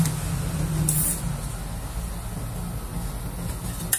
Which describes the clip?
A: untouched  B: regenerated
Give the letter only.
A